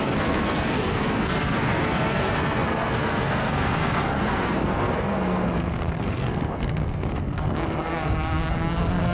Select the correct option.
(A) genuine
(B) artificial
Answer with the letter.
B